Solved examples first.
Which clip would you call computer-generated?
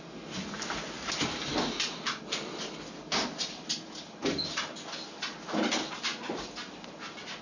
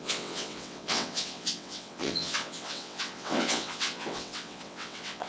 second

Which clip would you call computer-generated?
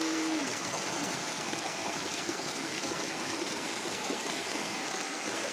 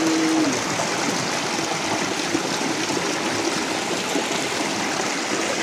first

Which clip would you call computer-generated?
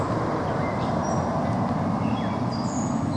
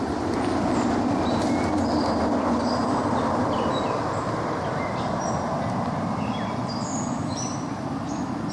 second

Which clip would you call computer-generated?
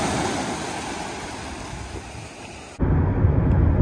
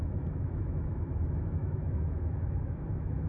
second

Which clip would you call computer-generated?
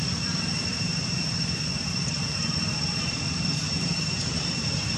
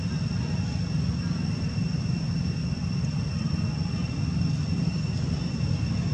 first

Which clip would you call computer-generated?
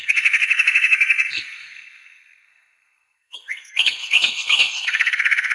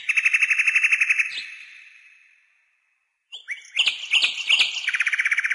first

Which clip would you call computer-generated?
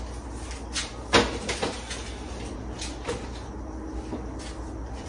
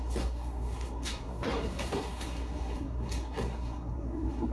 second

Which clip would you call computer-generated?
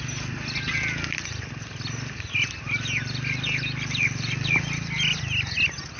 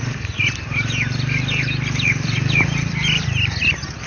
second